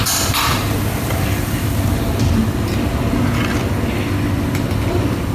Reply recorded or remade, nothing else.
recorded